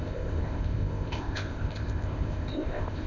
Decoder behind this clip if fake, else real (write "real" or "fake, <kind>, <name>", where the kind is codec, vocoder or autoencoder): fake, codec, ZipCodec